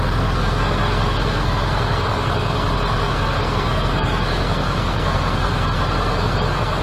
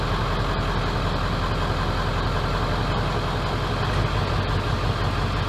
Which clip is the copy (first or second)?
first